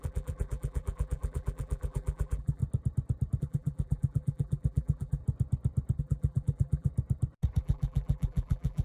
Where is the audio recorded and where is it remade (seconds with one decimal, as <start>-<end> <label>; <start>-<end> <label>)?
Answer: 0.0-2.6 remade; 2.6-3.4 recorded; 3.4-5.2 remade; 5.2-6.0 recorded; 6.0-6.9 remade; 6.9-7.6 recorded; 7.6-8.8 remade